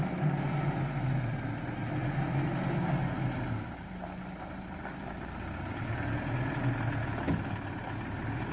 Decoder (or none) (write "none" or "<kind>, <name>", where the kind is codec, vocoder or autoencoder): none